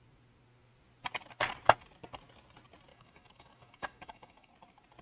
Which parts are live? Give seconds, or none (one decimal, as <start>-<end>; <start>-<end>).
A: 0.0-2.9; 4.5-5.0